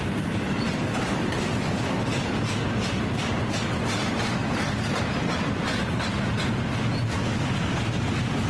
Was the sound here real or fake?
real